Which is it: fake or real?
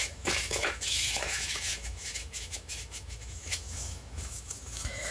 fake